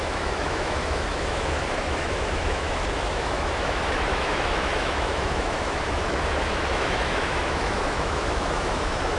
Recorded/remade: remade